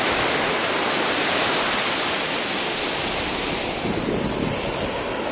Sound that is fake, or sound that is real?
real